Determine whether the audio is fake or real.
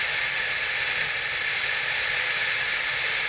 real